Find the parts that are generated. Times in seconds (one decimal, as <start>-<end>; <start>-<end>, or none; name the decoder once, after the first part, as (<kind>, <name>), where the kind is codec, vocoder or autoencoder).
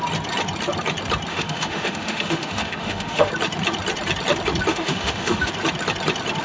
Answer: 1.3-3.3 (autoencoder, DAC-VAE); 4.7-5.5